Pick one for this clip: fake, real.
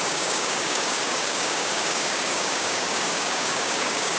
fake